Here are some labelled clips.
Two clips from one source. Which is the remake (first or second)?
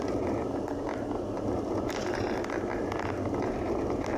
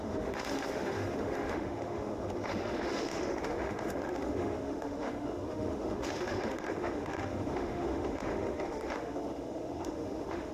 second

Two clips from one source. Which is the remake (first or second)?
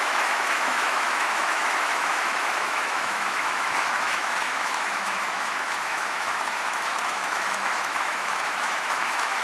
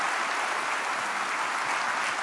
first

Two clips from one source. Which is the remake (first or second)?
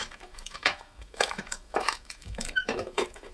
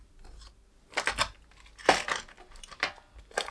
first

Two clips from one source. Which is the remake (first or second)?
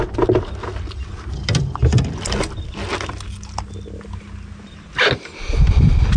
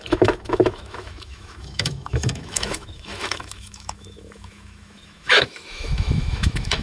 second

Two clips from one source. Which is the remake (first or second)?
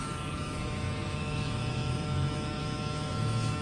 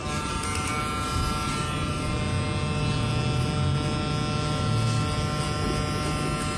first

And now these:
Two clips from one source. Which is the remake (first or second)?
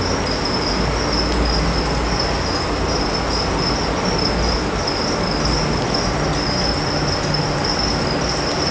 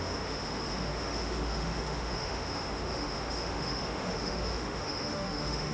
second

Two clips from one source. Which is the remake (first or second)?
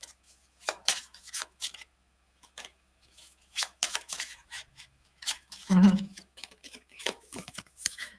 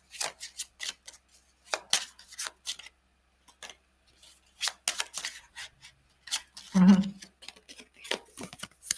first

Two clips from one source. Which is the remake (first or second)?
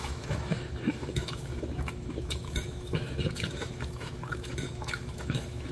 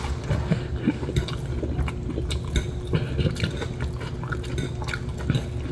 first